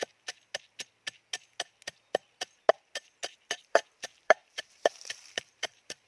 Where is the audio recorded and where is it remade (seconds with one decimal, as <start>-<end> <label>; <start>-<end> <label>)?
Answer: 0.0-3.7 recorded; 3.7-6.1 remade